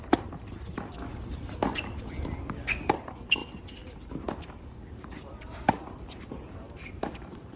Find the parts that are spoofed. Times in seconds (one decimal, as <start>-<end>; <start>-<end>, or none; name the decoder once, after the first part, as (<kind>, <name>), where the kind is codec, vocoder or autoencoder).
0.0-1.0 (vocoder, BigVGAN v2); 2.9-3.4; 5.2-7.6